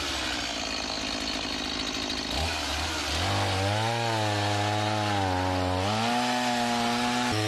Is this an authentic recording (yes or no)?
yes